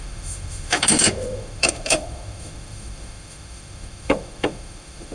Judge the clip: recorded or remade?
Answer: remade